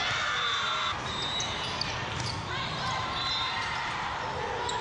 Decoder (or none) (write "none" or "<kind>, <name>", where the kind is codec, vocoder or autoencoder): none